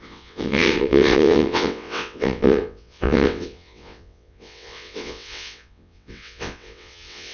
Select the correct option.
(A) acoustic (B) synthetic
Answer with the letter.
B